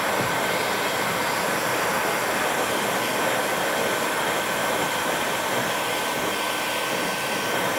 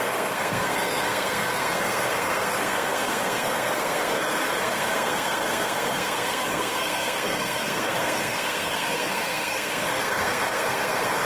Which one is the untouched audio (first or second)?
first